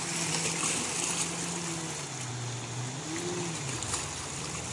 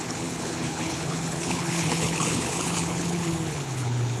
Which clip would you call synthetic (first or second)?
second